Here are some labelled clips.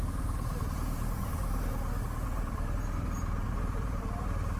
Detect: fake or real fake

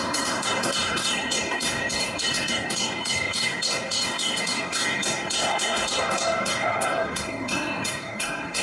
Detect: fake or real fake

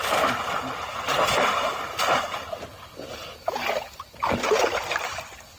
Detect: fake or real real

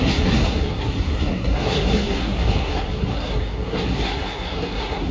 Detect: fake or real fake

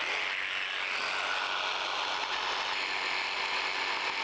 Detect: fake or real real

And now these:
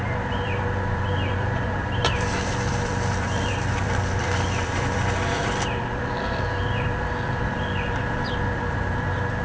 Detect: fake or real fake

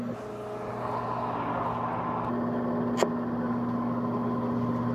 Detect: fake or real real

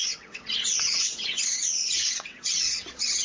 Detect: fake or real fake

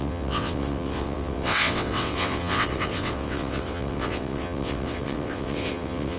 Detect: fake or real fake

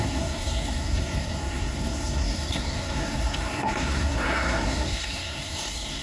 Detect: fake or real fake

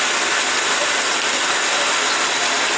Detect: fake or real real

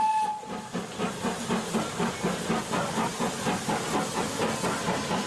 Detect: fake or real real